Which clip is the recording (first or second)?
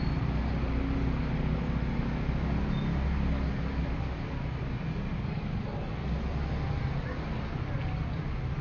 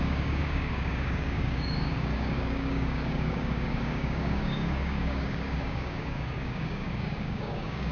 first